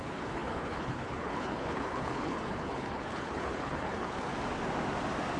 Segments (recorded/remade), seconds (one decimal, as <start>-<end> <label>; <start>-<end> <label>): 0.0-4.3 remade; 4.3-5.4 recorded